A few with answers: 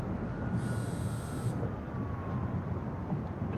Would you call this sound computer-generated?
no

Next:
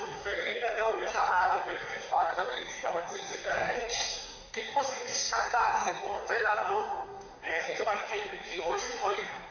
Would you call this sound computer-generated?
yes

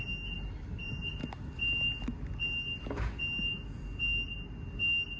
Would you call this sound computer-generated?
no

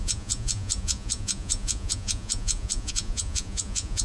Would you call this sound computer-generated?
yes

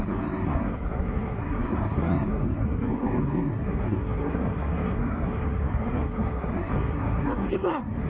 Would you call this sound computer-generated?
yes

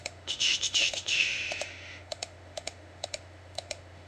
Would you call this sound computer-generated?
yes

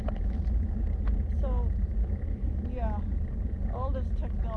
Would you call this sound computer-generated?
no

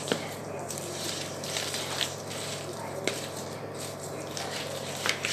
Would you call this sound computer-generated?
yes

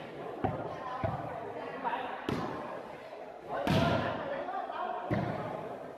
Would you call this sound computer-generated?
no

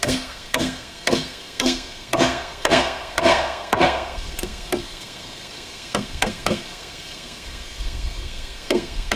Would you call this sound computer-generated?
yes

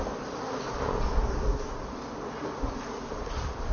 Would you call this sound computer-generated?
no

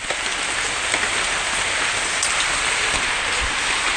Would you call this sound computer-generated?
no